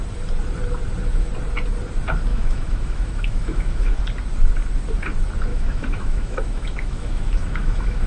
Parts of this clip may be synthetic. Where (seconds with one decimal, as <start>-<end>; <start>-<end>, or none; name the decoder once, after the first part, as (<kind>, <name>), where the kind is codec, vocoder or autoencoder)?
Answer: 2.3-4.0 (autoencoder, DAC-VAE); 5.5-8.1